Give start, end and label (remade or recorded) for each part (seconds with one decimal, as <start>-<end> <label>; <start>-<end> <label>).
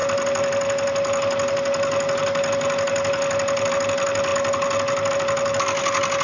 0.0-6.2 recorded